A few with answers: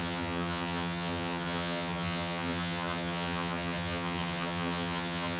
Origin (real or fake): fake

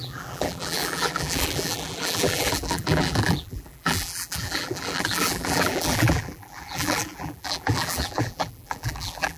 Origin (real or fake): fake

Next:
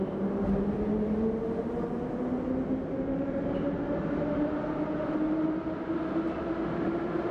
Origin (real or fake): real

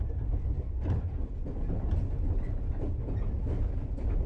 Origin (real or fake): real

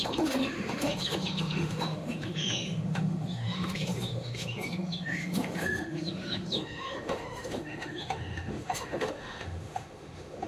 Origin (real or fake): fake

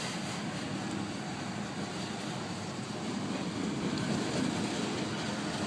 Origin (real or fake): real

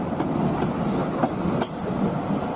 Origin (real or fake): real